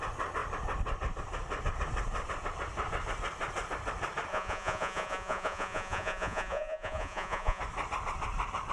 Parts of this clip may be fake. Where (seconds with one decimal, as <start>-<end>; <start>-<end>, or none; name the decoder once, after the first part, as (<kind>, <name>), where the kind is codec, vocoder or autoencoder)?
4.3-7.6 (vocoder, Vocos)